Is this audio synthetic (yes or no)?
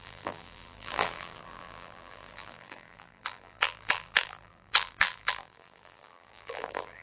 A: yes